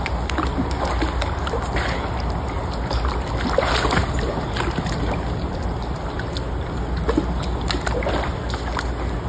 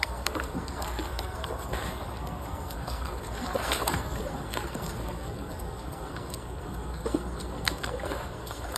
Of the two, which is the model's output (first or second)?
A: second